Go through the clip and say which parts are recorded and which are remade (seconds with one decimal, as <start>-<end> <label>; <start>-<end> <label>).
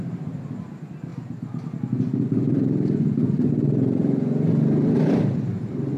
0.0-4.0 recorded; 4.0-6.0 remade